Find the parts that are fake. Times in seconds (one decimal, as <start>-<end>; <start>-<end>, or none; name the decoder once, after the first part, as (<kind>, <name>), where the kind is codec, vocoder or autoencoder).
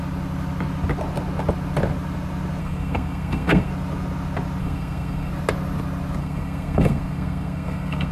2.6-3.7 (codec, SNAC); 4.6-5.3; 6.2-8.1